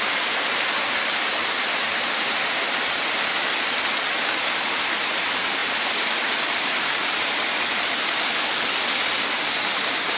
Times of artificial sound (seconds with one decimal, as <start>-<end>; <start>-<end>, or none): 5.6-8.0